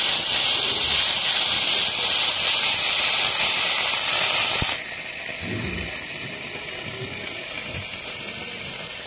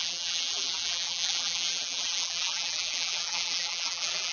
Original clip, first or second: first